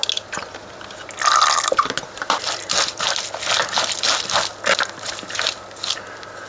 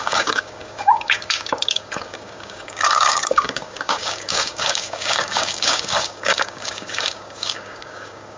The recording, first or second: first